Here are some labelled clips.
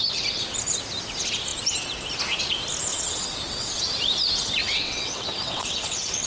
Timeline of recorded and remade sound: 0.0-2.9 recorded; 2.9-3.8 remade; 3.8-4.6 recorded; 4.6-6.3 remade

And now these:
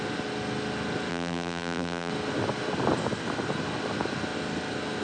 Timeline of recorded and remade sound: 0.0-1.1 recorded; 1.1-2.1 remade; 2.1-5.0 recorded

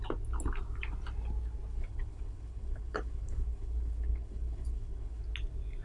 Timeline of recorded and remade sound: 0.0-1.7 recorded; 1.7-5.2 remade; 5.2-5.8 recorded